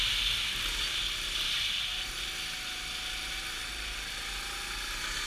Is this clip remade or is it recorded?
recorded